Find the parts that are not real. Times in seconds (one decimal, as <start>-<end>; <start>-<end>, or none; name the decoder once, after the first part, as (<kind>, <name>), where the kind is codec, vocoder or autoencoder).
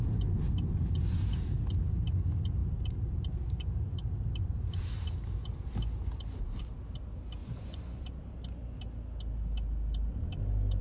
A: 7.4-8.0 (vocoder, Vocos)